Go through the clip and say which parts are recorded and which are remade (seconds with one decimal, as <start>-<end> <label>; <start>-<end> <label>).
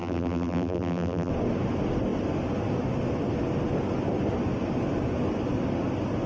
0.0-1.3 remade; 1.3-6.3 recorded